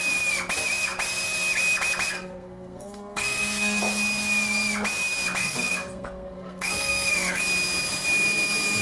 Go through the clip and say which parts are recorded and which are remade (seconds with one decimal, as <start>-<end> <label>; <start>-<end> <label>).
0.0-2.1 recorded; 2.1-3.8 remade; 3.8-5.4 recorded; 5.4-7.4 remade; 7.4-8.8 recorded